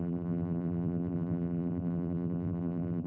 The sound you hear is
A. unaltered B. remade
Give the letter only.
B